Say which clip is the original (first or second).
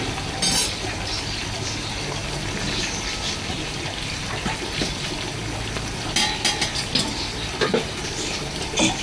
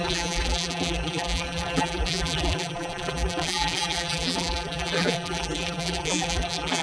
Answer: first